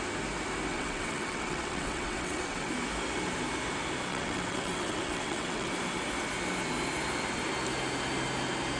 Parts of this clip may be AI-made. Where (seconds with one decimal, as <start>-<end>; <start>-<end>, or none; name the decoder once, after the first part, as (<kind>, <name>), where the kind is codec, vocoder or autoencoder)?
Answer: 0.7-2.7 (vocoder, WaveNeXt); 4.1-5.7